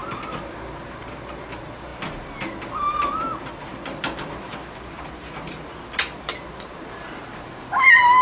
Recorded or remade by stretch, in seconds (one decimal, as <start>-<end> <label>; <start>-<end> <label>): 0.0-8.2 recorded